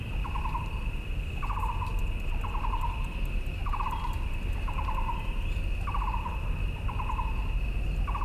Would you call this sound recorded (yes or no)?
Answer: yes